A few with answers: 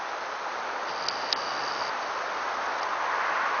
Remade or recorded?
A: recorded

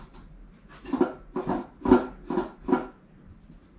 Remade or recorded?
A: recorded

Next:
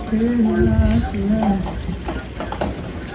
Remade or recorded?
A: recorded